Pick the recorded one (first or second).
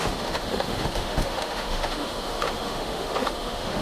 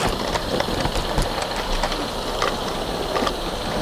second